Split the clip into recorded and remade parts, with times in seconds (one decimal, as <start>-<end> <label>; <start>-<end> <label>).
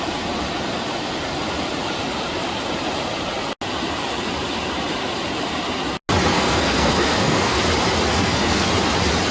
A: 0.0-6.3 recorded; 6.3-7.6 remade; 7.6-8.1 recorded; 8.1-8.7 remade; 8.7-9.3 recorded